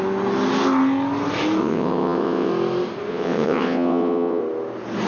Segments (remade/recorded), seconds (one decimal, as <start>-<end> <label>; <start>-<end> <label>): 0.0-1.6 recorded; 1.6-2.5 remade; 2.5-3.1 recorded; 3.1-4.4 remade; 4.4-5.1 recorded